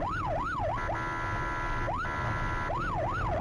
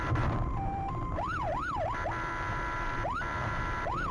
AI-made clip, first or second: second